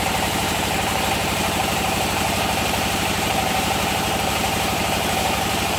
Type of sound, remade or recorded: remade